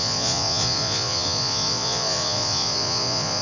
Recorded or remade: remade